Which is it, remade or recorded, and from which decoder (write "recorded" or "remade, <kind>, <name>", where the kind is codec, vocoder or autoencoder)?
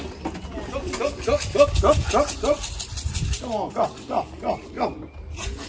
recorded